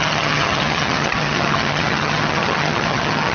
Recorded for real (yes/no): no